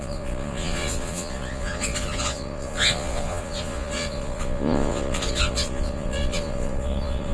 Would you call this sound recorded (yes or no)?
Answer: no